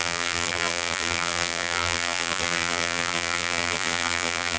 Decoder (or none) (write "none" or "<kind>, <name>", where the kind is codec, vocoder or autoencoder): vocoder, BigVGAN v2